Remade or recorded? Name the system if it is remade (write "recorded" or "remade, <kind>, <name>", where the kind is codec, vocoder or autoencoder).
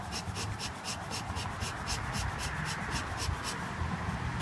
recorded